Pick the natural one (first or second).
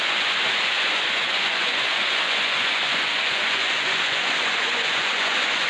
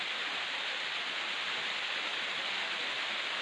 second